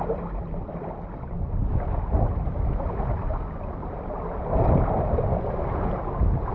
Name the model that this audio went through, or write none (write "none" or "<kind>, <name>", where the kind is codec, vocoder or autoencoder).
none